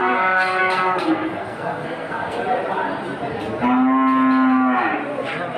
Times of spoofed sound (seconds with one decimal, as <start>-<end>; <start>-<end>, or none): 0.0-2.4